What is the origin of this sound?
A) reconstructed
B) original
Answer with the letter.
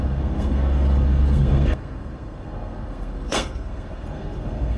A